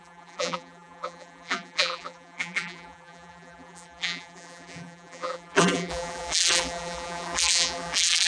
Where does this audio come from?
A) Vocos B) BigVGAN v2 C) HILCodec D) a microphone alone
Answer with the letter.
B